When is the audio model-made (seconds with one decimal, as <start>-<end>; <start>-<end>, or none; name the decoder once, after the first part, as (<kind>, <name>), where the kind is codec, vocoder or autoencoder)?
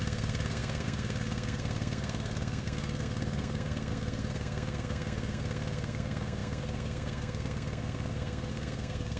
0.0-9.2 (codec, SNAC)